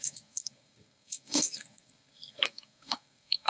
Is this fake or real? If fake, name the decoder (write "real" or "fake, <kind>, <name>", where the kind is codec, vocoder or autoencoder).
fake, codec, SNAC